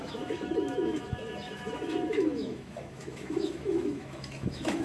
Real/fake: fake